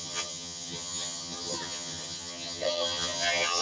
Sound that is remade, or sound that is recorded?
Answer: remade